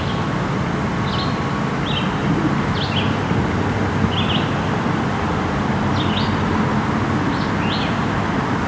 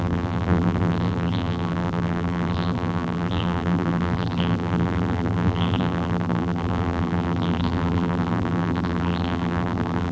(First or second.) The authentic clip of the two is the first